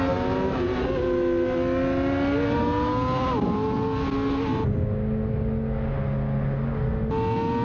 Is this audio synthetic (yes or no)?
no